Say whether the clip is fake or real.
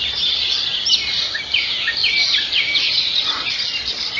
real